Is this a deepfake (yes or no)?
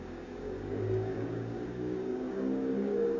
yes